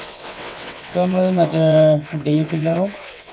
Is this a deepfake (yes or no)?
yes